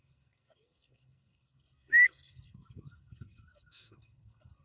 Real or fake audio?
fake